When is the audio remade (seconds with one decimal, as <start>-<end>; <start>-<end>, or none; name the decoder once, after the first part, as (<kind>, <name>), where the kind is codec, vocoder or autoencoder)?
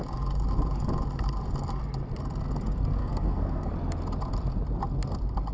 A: 3.0-3.7 (codec, SNAC)